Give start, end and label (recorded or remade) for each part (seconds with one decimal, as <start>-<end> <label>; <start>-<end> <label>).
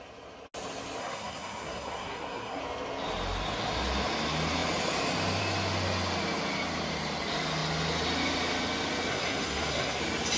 0.0-1.0 recorded; 1.0-2.6 remade; 2.6-9.1 recorded; 9.1-10.0 remade; 10.0-10.4 recorded